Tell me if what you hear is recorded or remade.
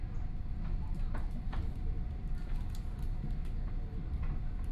recorded